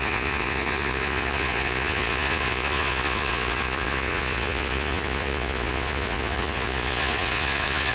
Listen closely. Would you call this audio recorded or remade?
remade